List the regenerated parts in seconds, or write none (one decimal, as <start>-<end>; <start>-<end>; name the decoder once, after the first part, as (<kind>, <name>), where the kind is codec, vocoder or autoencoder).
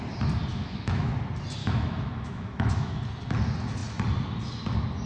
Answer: 0.5-1.1 (autoencoder, DAC-VAE); 1.6-3.0